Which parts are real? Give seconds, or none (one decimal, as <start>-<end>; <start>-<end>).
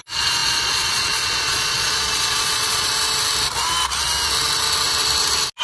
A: 2.9-5.6